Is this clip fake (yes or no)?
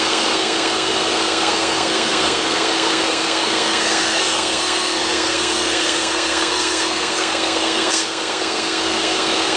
yes